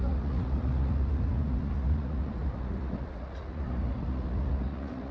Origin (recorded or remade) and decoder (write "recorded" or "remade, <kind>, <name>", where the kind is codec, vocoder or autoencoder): remade, vocoder, Vocos